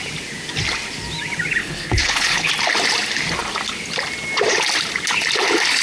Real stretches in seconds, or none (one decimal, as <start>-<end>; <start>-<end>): 0.0-1.6; 2.5-5.8